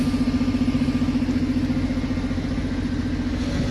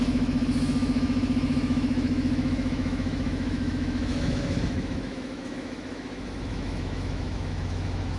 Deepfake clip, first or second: second